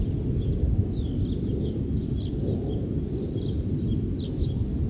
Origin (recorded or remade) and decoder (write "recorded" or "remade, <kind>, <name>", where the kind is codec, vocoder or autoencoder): recorded